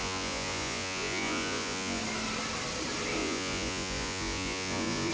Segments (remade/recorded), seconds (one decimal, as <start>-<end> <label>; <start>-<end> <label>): 0.0-2.0 remade; 2.0-3.2 recorded; 3.2-5.1 remade